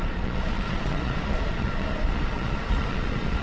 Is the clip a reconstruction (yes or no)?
yes